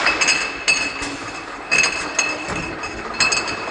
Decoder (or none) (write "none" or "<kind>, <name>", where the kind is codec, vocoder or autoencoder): none